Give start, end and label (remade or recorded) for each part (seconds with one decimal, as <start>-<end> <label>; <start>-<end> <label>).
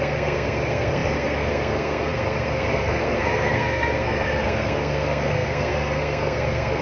0.0-6.8 remade